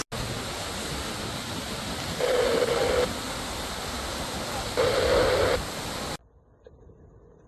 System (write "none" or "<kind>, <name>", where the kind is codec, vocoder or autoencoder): none